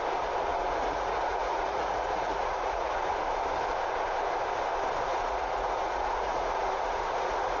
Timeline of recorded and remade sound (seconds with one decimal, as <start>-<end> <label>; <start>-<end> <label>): 0.0-0.5 recorded; 0.5-3.1 remade; 3.1-5.1 recorded; 5.1-7.6 remade